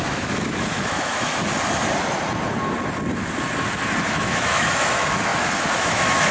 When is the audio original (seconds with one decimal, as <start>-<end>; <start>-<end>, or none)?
1.4-4.1